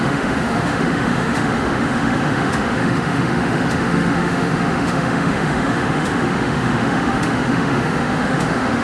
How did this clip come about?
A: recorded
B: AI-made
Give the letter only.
B